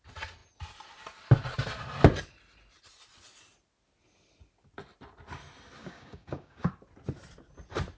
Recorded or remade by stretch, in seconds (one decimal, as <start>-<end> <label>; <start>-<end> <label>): 0.0-5.8 recorded; 5.8-6.7 remade; 6.7-8.0 recorded